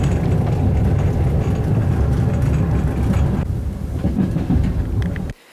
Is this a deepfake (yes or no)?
no